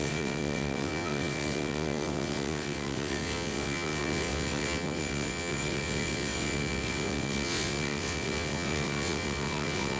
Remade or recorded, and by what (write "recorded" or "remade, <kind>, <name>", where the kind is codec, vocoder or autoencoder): remade, vocoder, WaveNeXt